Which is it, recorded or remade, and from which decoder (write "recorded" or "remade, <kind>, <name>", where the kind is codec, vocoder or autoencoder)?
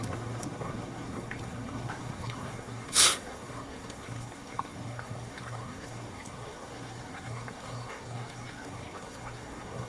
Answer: remade, codec, SNAC